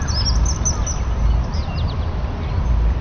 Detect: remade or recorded recorded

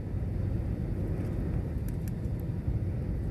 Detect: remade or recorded recorded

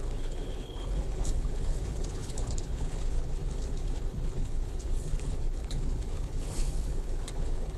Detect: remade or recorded remade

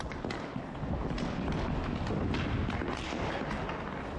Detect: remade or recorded recorded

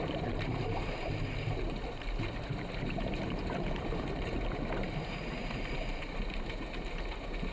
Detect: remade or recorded remade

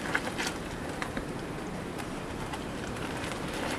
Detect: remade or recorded remade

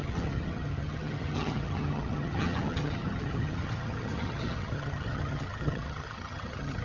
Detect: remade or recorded remade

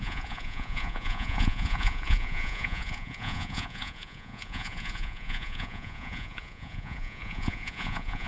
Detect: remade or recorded remade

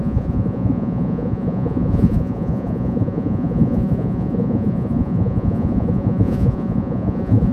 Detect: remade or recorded remade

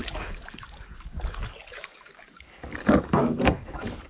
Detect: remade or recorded remade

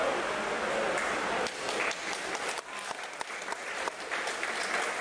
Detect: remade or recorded recorded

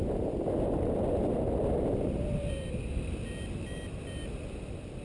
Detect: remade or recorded recorded